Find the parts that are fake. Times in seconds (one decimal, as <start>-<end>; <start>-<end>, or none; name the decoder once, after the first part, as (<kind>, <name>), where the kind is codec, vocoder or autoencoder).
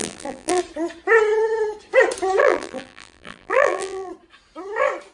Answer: 0.0-0.6 (vocoder, BigVGAN v2); 2.4-4.1